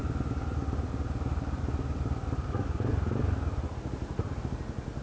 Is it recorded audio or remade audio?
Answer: recorded